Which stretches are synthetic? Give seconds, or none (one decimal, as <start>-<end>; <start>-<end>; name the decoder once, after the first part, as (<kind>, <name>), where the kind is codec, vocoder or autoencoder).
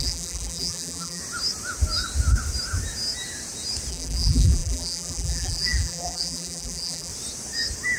0.0-1.2 (vocoder, BigVGAN v2); 3.9-7.1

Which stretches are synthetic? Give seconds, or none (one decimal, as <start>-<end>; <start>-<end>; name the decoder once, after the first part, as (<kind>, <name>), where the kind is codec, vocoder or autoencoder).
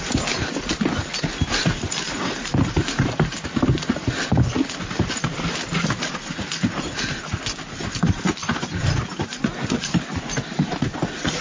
8.4-10.5 (vocoder, BigVGAN v2)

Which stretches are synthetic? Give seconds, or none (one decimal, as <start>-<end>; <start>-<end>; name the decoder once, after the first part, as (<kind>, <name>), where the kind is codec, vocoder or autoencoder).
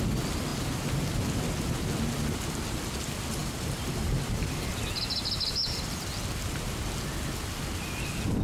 3.4-4.7 (vocoder, BigVGAN v2)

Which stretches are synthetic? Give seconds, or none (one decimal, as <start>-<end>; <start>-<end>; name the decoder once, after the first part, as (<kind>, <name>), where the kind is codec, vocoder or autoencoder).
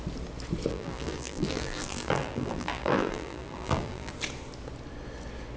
0.7-4.1 (vocoder, BigVGAN v2)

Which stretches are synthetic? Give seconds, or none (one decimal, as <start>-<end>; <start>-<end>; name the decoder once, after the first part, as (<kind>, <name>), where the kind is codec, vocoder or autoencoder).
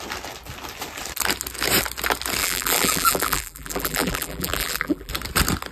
2.4-5.1 (vocoder, BigVGAN v2)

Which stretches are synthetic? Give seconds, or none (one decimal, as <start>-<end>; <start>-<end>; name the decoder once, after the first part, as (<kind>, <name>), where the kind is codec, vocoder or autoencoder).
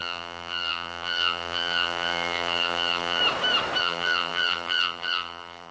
0.0-3.2 (vocoder, BigVGAN v2); 3.8-5.7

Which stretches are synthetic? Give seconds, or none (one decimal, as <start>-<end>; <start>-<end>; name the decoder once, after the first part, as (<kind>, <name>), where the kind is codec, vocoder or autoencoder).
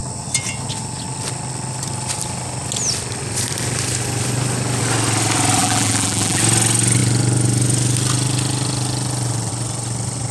5.6-6.4 (vocoder, BigVGAN v2)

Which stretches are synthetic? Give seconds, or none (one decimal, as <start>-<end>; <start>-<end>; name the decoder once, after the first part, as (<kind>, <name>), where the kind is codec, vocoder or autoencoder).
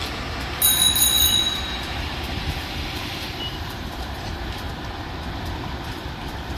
1.4-4.7 (vocoder, BigVGAN v2)